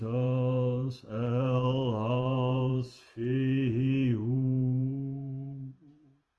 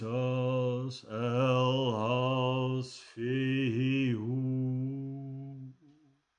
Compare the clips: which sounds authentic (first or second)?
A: second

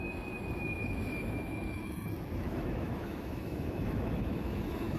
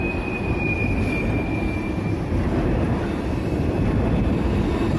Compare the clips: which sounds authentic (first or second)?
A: second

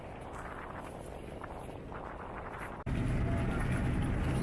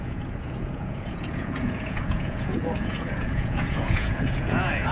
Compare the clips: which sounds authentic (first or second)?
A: first